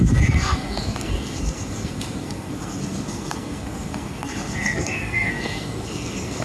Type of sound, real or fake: fake